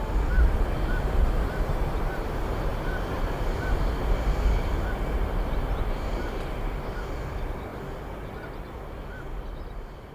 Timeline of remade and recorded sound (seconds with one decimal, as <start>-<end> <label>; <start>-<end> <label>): 0.0-10.1 recorded